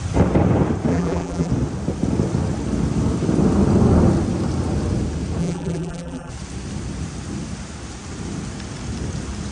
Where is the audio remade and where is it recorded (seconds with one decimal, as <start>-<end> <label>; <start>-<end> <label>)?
0.0-0.9 recorded; 0.9-1.5 remade; 1.5-5.4 recorded; 5.4-6.3 remade; 6.3-9.5 recorded